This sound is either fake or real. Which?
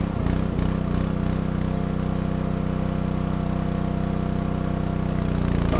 real